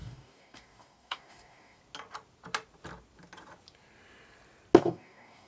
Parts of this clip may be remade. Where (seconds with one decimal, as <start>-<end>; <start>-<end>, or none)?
0.0-1.8; 4.8-5.5